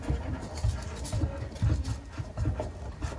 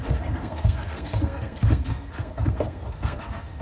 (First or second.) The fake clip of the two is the second